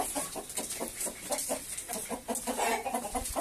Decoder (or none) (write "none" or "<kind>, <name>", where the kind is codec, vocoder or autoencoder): none